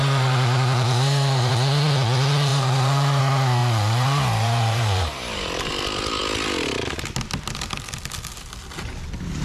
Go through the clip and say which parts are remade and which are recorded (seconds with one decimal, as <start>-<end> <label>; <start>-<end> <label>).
0.0-1.5 remade; 1.5-2.5 recorded; 2.5-3.2 remade; 3.2-3.6 recorded; 3.6-5.7 remade; 5.7-9.4 recorded